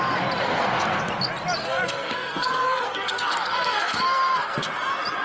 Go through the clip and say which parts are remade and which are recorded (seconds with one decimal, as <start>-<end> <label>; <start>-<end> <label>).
0.0-0.4 recorded; 0.4-1.0 remade; 1.0-1.6 recorded; 1.6-4.7 remade; 4.7-5.2 recorded